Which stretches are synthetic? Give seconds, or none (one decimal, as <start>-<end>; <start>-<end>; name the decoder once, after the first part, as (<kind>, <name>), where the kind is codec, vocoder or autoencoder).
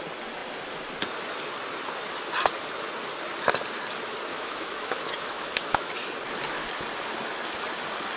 4.3-5.9 (autoencoder, DAC-VAE)